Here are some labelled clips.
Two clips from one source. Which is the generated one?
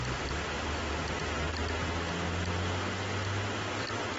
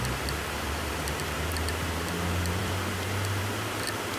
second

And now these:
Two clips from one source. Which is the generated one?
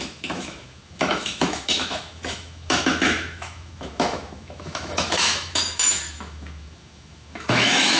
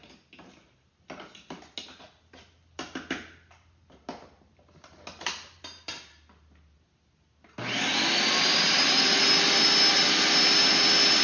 first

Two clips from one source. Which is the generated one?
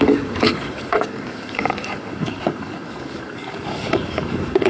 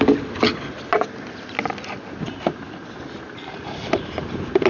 first